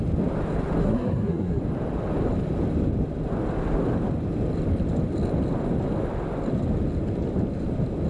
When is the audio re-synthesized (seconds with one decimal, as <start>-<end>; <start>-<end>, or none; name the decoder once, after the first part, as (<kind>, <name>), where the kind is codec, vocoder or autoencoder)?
0.8-1.6 (codec, SNAC)